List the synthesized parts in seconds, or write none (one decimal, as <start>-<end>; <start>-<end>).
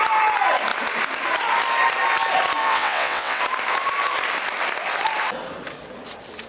2.6-3.4